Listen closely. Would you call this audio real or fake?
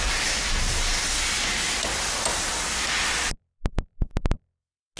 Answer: real